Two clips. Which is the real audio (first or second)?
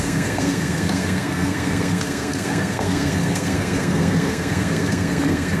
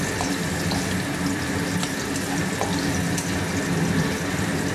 second